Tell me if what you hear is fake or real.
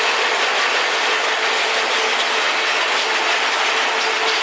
real